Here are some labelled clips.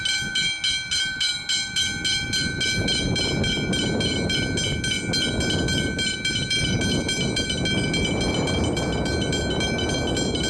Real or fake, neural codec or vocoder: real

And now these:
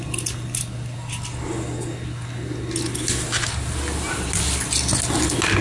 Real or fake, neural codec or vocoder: real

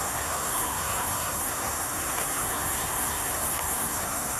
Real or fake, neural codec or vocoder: fake, codec, SNAC